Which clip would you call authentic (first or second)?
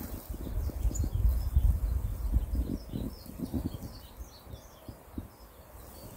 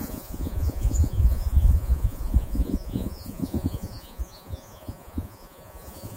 first